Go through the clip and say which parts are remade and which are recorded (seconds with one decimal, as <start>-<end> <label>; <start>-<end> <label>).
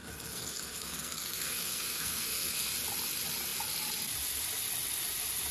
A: 0.0-2.7 remade; 2.7-5.5 recorded